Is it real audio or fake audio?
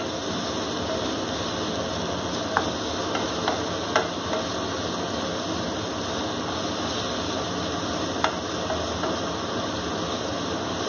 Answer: real